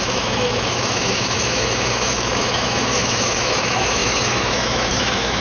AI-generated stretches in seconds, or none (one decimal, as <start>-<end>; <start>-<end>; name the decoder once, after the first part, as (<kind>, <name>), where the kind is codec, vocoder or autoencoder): 0.0-5.4 (autoencoder, DAC-VAE)